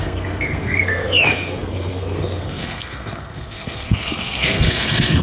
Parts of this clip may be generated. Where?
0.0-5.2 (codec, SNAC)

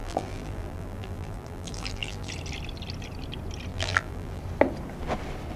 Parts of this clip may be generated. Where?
0.0-2.3 (vocoder, BigVGAN v2); 3.7-4.4

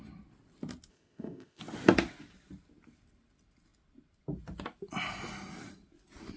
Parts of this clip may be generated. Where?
0.9-1.6 (codec, ZipCodec)

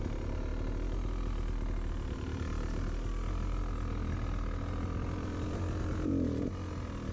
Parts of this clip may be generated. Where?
none